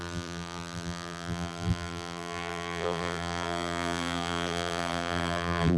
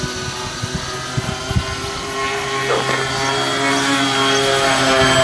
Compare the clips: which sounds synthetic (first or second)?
first